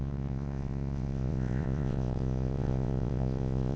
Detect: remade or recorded remade